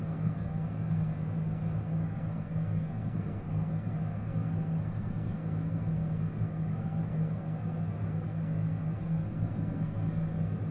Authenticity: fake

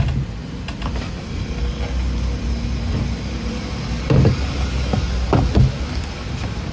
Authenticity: real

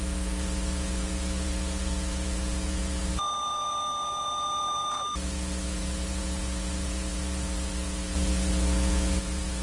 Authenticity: fake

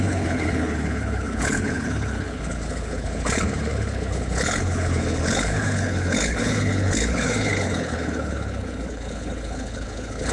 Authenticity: fake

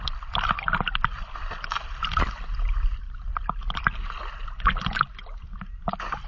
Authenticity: real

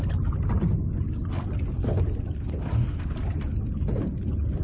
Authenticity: real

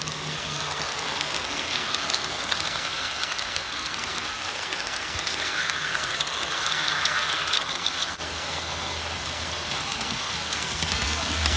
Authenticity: fake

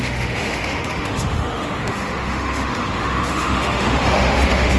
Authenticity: fake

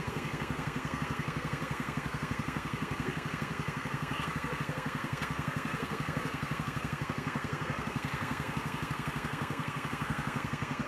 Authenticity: fake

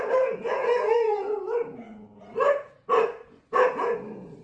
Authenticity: fake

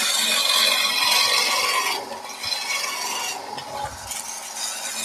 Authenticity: real